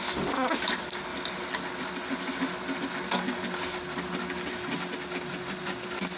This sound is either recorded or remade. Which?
recorded